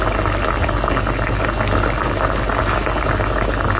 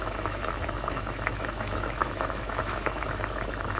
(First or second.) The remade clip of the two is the second